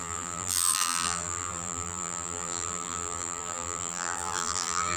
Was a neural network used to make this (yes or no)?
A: yes